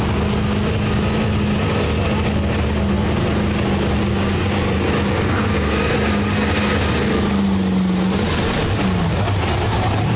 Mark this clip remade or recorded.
recorded